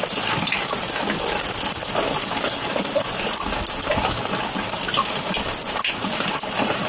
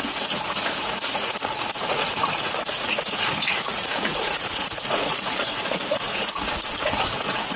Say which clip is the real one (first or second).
first